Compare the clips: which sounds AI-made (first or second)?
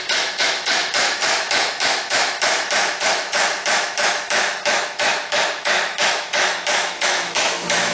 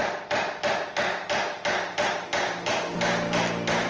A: first